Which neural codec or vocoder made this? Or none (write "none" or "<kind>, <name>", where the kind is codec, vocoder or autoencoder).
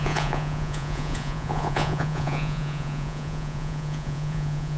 vocoder, Vocos